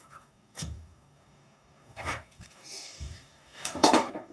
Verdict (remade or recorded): remade